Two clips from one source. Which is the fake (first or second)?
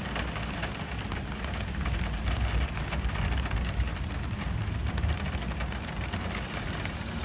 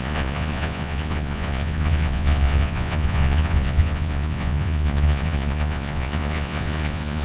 second